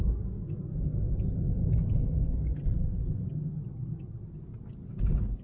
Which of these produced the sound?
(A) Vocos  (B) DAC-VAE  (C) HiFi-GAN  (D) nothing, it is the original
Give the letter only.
D